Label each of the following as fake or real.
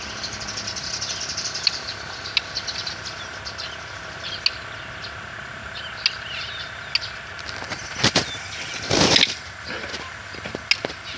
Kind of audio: real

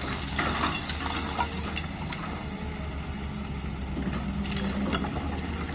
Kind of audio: real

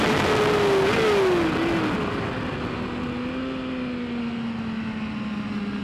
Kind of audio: real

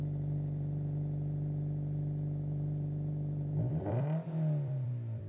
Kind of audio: fake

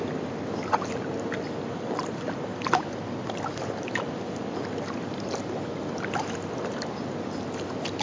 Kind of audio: real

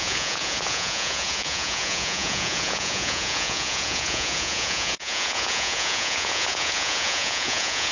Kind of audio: fake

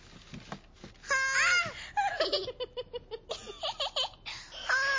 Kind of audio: real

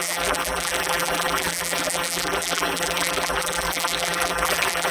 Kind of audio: fake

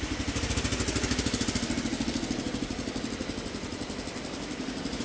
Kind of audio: real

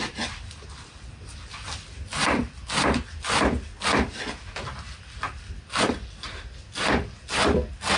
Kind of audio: real